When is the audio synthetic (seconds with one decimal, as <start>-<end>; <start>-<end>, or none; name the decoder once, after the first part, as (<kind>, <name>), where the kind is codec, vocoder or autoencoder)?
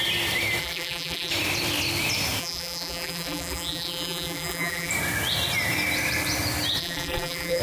0.6-1.3 (vocoder, BigVGAN v2); 2.4-4.9; 6.8-7.6